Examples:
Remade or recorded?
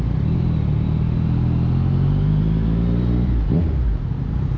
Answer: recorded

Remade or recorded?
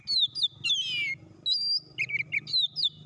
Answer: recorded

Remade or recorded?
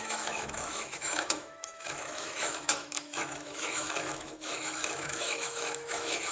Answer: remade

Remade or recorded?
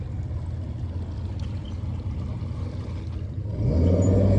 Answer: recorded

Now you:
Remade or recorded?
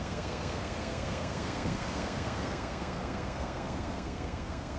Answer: remade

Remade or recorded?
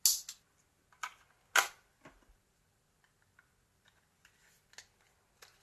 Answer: recorded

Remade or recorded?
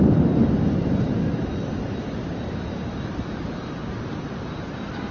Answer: recorded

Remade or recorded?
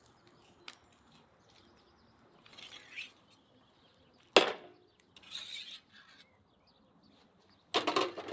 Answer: recorded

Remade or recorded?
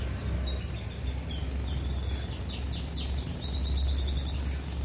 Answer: recorded